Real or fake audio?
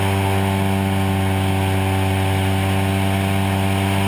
real